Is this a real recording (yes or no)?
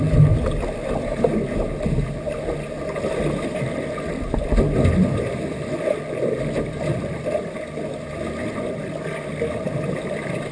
yes